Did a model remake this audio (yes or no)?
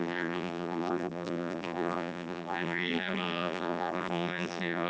yes